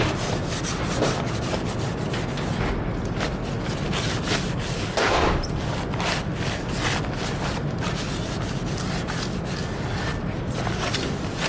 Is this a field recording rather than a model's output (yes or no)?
yes